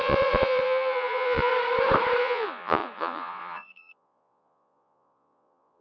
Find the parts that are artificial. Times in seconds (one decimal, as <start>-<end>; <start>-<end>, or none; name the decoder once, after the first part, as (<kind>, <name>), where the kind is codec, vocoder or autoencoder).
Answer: 0.0-1.5 (vocoder, Vocos); 2.2-5.8